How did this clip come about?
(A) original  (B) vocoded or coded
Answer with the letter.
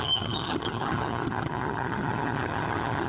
B